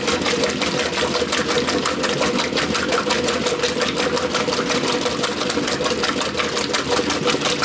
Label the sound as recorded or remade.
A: recorded